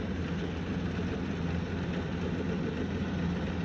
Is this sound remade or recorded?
recorded